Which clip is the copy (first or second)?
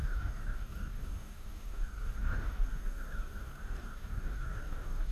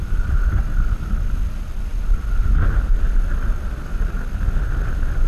first